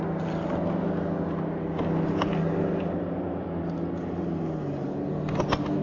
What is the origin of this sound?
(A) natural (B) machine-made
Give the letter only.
A